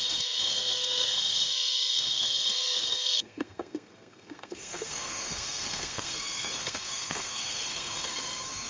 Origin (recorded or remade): remade